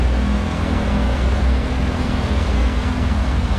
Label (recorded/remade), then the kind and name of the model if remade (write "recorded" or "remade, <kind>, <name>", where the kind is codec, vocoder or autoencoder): remade, codec, SNAC